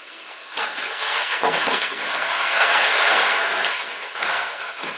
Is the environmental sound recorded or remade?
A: remade